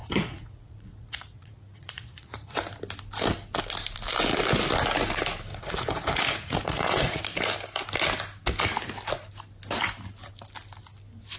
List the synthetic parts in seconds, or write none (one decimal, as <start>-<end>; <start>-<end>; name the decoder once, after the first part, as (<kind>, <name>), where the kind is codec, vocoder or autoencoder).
0.0-2.6 (vocoder, Vocos); 5.5-7.2